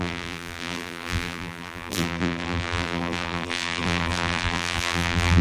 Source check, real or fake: fake